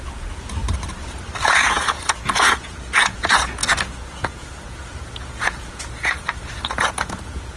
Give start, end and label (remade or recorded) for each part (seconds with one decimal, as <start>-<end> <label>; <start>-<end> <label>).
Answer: 0.0-0.6 remade; 0.6-1.5 recorded; 1.5-7.6 remade